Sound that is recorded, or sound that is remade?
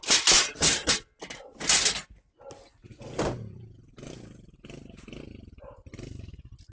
recorded